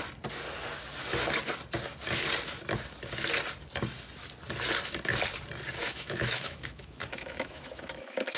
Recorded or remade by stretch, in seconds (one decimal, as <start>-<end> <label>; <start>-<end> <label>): 0.0-5.8 recorded; 5.8-8.4 remade